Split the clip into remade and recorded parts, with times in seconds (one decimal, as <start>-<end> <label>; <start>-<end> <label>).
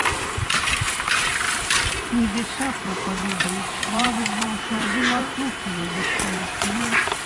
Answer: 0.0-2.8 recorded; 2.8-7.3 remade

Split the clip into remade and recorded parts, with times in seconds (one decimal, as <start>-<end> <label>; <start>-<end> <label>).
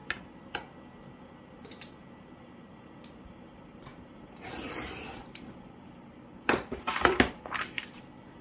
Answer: 0.0-1.1 recorded; 1.1-8.4 remade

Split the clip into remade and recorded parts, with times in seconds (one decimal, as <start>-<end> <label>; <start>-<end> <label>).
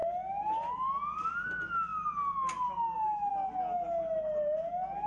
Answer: 0.0-5.1 recorded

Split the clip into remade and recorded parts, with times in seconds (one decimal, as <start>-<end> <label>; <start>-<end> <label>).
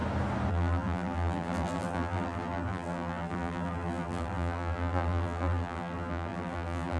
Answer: 0.0-0.5 recorded; 0.5-7.0 remade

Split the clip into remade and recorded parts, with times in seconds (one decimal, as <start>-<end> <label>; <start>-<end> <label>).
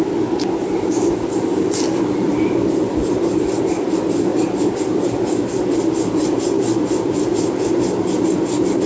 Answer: 0.0-1.5 recorded; 1.5-3.2 remade; 3.2-4.3 recorded; 4.3-8.9 remade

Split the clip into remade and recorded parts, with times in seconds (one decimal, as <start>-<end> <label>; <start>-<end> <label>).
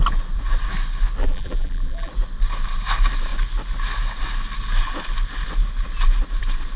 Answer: 0.0-1.2 recorded; 1.2-2.1 remade; 2.1-6.8 recorded